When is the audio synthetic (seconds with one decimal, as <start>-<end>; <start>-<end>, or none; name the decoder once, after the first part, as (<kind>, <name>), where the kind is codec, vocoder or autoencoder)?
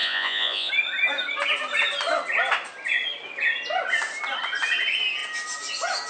0.0-0.7 (vocoder, Vocos)